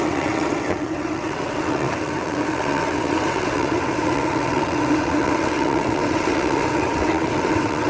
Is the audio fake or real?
fake